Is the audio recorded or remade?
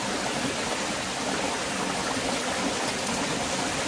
recorded